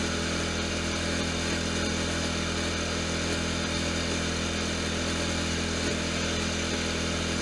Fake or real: real